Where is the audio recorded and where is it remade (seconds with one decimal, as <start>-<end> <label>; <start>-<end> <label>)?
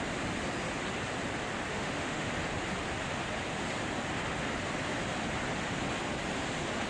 0.0-1.7 recorded; 1.7-2.3 remade; 2.3-6.9 recorded